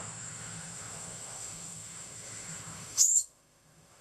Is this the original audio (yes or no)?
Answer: no